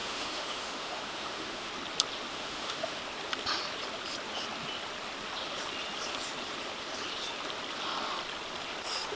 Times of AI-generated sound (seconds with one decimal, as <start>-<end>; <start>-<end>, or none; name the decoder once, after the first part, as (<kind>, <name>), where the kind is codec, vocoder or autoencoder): 0.0-1.7 (autoencoder, DAC-VAE); 2.3-3.0